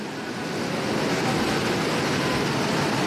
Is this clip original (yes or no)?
yes